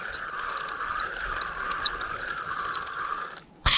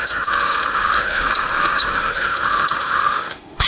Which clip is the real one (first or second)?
first